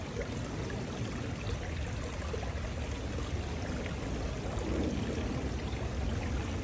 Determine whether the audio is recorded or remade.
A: recorded